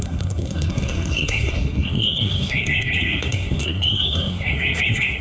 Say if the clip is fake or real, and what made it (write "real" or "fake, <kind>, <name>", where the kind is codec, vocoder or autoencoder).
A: fake, codec, SNAC